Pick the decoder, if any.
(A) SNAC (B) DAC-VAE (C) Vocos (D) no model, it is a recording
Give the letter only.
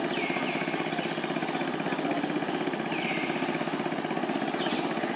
D